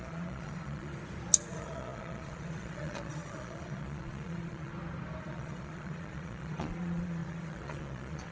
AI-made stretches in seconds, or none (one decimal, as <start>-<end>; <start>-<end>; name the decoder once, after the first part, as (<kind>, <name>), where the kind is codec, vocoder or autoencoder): 0.0-0.9 (vocoder, Vocos); 1.5-4.7; 5.2-8.3